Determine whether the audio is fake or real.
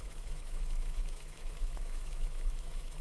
fake